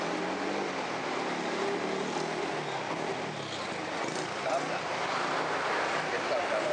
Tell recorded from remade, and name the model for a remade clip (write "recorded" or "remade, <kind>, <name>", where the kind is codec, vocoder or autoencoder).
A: recorded